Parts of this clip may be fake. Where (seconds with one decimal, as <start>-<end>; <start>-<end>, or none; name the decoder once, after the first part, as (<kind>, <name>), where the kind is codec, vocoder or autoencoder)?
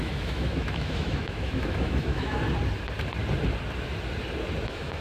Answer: 0.0-2.4 (autoencoder, DAC-VAE); 4.6-5.0